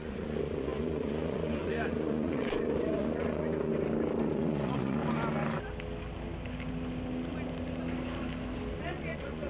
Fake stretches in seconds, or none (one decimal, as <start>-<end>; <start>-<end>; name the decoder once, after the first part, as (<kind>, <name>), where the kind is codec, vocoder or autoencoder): 0.0-3.7 (vocoder, Vocos); 4.2-5.0; 8.8-9.5